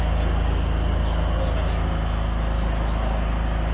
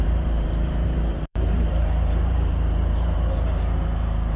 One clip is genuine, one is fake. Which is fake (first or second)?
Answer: second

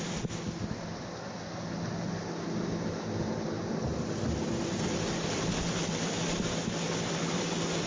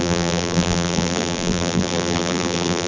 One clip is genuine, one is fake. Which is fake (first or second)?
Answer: second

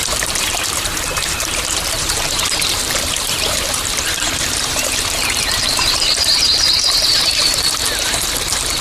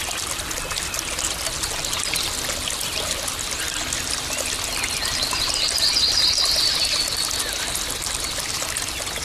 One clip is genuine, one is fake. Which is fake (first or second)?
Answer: first